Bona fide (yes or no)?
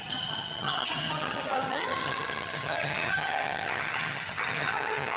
no